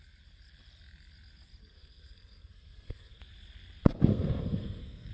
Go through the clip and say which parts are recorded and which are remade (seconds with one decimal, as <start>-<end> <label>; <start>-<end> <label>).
0.0-1.6 recorded; 1.6-3.2 remade; 3.2-4.1 recorded; 4.1-5.1 remade